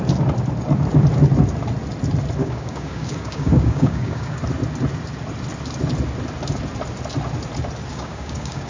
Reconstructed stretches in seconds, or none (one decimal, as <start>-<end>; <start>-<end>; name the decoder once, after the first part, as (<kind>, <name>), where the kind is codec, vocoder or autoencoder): 2.4-4.4 (codec, DAC); 7.9-8.7